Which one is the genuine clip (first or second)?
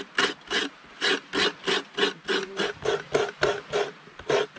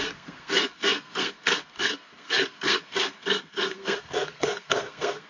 first